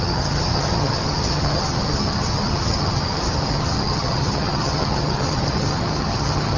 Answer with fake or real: fake